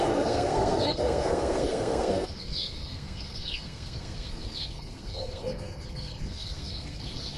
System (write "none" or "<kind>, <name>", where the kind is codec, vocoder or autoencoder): codec, SNAC